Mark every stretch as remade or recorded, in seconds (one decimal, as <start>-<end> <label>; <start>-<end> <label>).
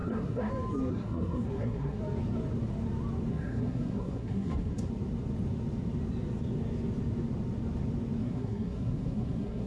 0.0-0.5 remade; 0.5-0.9 recorded; 0.9-2.0 remade; 2.0-3.3 recorded; 3.3-4.9 remade; 4.9-8.2 recorded; 8.2-9.7 remade